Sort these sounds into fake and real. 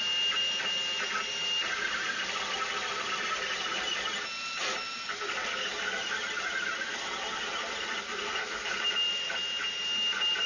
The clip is real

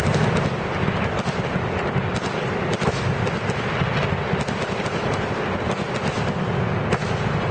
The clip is real